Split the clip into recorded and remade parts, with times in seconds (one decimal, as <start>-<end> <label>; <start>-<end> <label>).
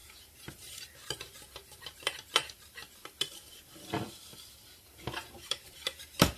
0.0-2.8 remade; 2.8-4.5 recorded; 4.5-6.4 remade